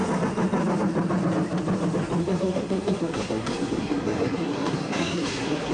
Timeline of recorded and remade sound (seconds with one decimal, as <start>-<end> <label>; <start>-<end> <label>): 0.0-2.2 recorded; 2.2-5.7 remade